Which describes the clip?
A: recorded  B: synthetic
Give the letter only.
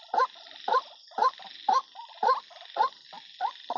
A